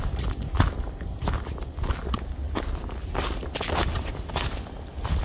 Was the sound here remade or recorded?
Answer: recorded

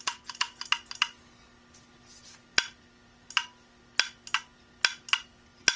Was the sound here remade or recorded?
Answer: recorded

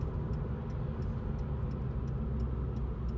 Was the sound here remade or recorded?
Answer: recorded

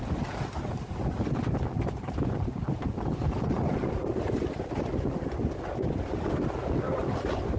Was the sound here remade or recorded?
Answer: recorded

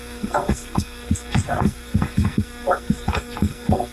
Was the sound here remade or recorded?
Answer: remade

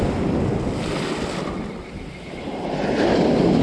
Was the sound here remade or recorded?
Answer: recorded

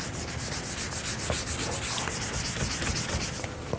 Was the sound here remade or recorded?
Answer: recorded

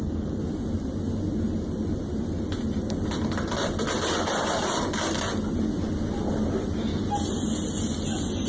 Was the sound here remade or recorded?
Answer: recorded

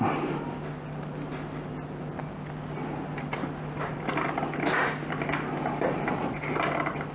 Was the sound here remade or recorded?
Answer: recorded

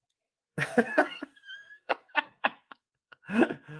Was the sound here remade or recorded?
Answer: remade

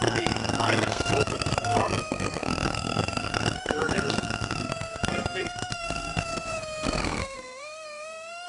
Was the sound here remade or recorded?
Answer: remade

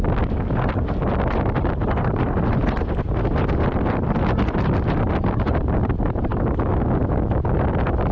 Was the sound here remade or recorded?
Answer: recorded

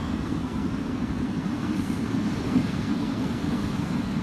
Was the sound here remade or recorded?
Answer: remade